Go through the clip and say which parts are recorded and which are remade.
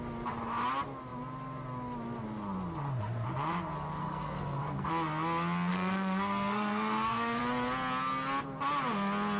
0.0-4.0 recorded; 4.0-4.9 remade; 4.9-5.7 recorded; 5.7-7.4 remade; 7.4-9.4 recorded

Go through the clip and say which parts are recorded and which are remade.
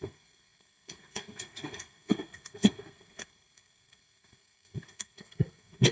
0.0-5.9 remade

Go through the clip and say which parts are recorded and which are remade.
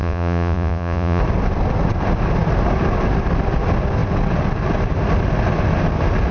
0.0-1.2 remade; 1.2-6.3 recorded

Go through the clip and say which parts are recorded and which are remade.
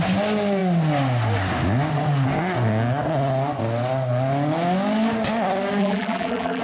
0.0-5.8 recorded; 5.8-6.6 remade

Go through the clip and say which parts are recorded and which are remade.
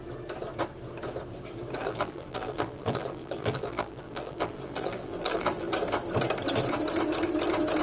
0.0-1.8 recorded; 1.8-5.7 remade; 5.7-7.8 recorded